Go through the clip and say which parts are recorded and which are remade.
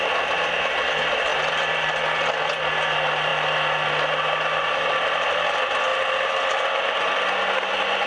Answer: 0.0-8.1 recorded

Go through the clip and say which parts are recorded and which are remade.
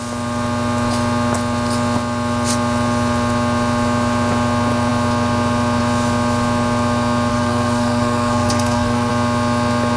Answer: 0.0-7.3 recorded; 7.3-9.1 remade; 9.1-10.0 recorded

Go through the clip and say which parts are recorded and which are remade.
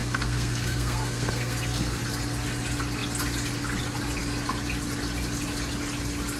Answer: 0.0-2.0 remade; 2.0-6.4 recorded